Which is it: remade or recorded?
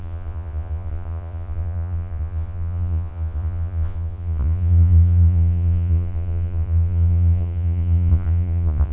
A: remade